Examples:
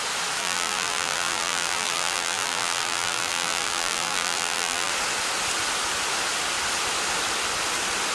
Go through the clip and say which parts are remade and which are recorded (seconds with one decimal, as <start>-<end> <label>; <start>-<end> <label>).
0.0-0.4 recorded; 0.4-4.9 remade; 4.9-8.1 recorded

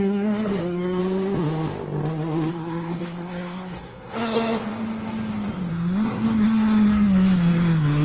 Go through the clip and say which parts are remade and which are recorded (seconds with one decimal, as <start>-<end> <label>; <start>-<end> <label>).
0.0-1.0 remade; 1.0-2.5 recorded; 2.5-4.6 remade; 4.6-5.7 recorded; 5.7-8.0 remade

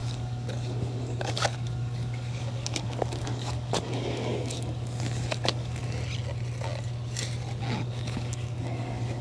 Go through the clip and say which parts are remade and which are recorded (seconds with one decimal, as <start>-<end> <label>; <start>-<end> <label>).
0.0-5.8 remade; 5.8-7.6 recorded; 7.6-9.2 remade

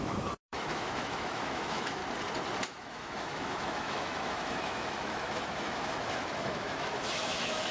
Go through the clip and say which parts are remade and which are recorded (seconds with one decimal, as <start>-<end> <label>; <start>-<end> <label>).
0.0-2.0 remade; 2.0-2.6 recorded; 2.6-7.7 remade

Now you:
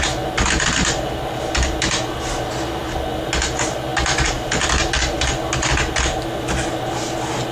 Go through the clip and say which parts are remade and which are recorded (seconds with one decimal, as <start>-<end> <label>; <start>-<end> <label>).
0.0-7.5 recorded

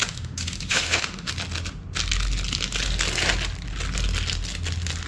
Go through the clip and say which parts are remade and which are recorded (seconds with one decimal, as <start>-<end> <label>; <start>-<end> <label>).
0.0-1.3 remade; 1.3-5.1 recorded

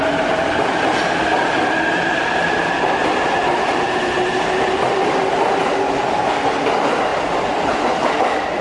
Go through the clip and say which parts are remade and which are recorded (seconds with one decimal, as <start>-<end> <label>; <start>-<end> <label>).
0.0-8.6 recorded